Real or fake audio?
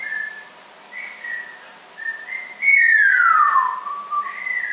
real